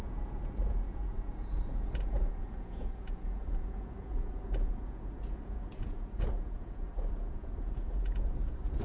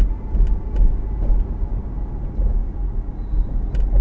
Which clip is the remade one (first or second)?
first